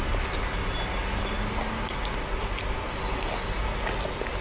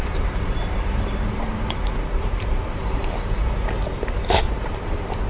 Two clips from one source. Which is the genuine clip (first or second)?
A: first